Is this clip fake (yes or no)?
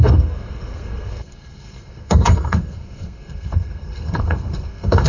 yes